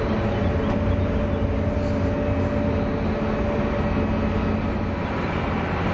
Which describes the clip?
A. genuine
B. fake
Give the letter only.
A